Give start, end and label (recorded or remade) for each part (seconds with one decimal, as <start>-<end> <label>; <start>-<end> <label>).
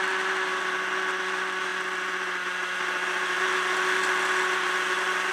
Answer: 0.0-5.3 remade